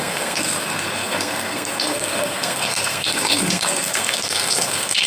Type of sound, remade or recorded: remade